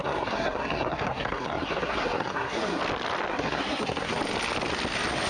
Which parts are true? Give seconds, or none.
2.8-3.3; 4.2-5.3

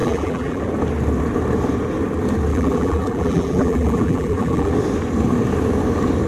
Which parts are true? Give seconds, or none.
0.6-2.5; 4.7-6.3

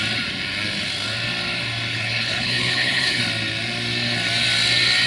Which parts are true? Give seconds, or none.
0.0-1.9; 3.2-5.1

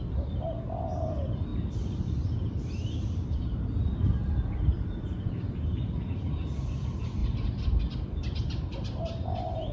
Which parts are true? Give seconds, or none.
0.0-9.7

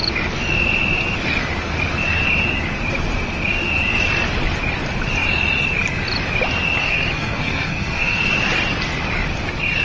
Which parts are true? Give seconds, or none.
0.0-6.8; 8.2-9.8

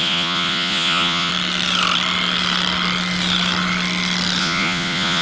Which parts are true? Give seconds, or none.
1.3-4.4